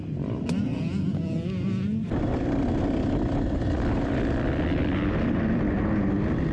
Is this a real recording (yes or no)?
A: yes